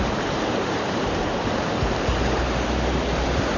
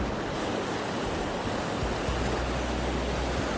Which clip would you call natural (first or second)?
second